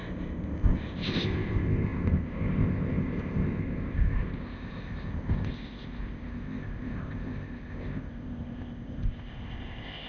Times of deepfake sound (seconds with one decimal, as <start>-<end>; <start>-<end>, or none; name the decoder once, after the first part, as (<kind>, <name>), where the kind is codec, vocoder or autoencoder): 0.0-10.1 (codec, ZipCodec)